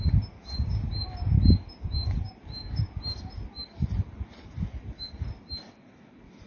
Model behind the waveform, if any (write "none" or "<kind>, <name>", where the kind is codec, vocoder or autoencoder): none